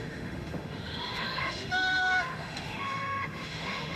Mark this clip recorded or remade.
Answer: remade